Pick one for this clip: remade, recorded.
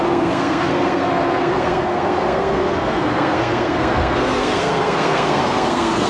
remade